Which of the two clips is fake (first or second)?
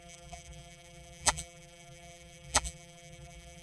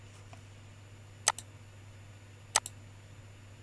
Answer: first